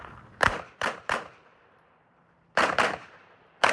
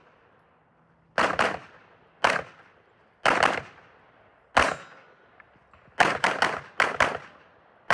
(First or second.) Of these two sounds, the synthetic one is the first